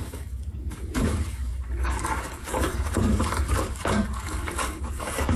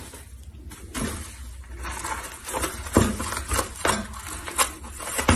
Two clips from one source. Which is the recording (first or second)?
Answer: second